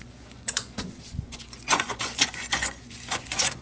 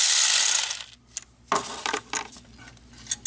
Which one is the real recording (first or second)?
second